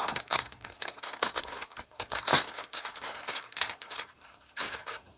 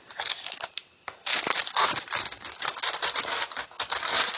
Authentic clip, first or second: second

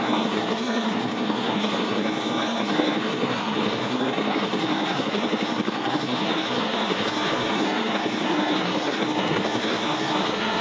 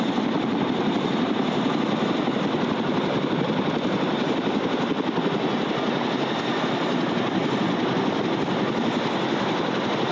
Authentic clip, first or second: second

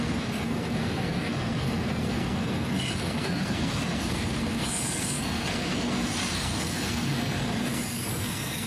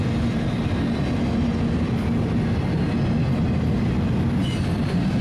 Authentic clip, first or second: second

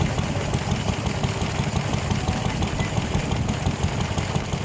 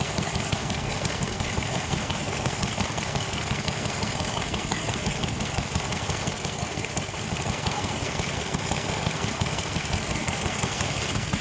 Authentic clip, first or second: first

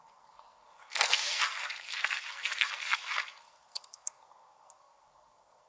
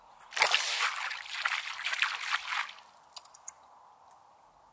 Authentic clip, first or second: second